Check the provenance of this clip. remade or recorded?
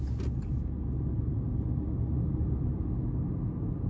recorded